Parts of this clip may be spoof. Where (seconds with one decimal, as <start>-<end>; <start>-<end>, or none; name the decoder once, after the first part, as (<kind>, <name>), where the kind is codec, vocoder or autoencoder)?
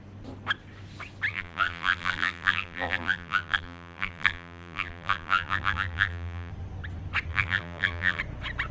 1.3-6.5 (vocoder, BigVGAN v2); 7.3-8.2